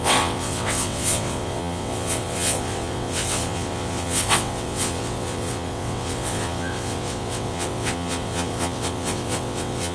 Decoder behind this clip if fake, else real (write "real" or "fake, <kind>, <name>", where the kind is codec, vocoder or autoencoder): fake, vocoder, WaveNeXt